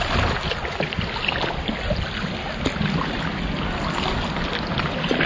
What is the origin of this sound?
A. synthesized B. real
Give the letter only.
B